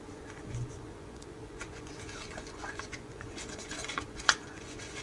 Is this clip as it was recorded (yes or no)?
no